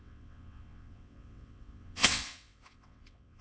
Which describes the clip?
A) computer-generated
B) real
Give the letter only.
A